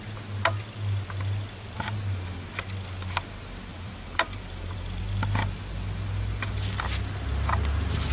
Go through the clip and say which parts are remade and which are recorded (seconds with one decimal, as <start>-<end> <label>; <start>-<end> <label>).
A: 0.0-3.7 recorded; 3.7-5.0 remade; 5.0-8.1 recorded